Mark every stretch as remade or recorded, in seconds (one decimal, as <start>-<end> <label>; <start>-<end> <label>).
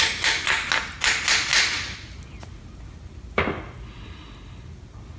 0.0-5.2 recorded